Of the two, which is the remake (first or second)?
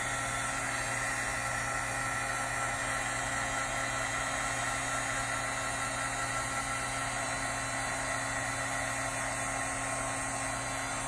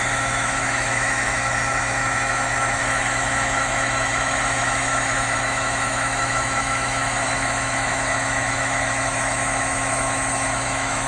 second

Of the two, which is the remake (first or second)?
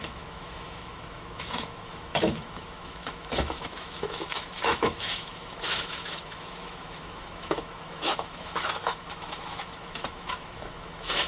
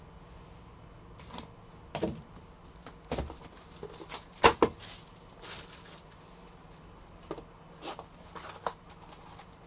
first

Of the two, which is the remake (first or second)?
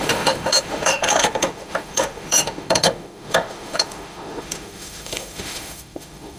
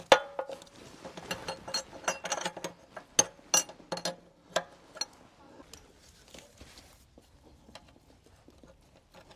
first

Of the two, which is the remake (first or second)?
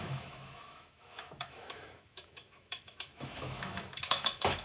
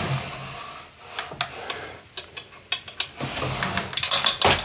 first